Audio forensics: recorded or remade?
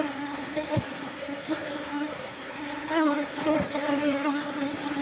remade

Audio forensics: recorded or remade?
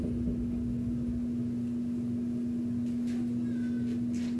recorded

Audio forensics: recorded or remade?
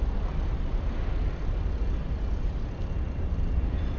recorded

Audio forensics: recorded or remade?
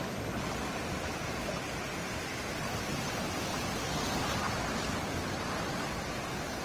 recorded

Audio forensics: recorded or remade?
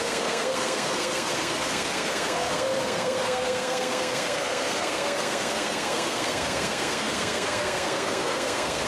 remade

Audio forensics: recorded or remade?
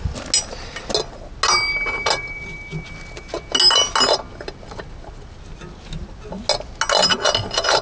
recorded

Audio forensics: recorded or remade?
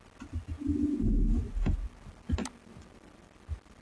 recorded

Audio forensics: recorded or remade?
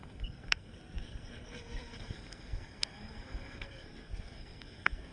remade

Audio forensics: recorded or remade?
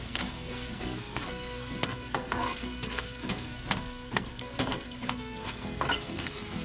remade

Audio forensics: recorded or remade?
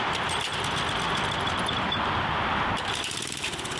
recorded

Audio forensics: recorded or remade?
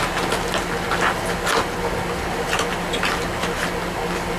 recorded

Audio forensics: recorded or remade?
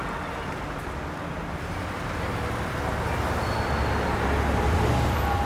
recorded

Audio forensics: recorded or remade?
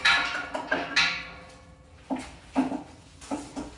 recorded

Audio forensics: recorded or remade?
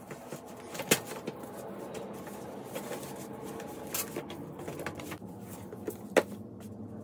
recorded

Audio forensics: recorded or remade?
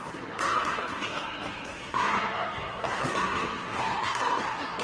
remade